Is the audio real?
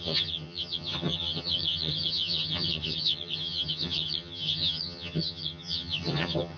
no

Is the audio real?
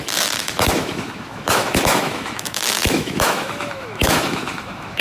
no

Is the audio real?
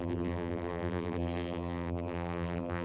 no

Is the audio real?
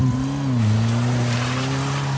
yes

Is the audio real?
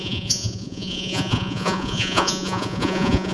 no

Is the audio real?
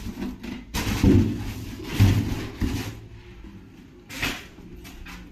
yes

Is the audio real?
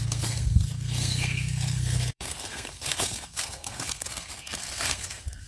no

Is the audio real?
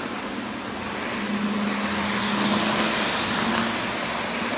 yes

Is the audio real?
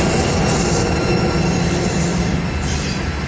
yes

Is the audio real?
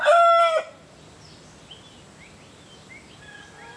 yes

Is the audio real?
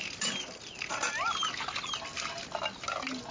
yes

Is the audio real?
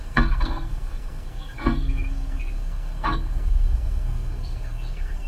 no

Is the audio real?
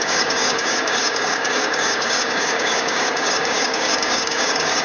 no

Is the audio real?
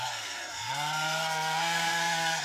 no